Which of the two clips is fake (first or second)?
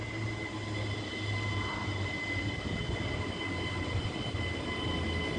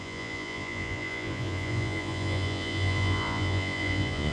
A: second